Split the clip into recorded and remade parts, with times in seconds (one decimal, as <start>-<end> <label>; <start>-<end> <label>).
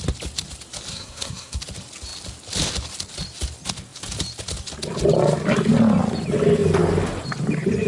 0.0-0.9 recorded; 0.9-1.6 remade; 1.6-7.9 recorded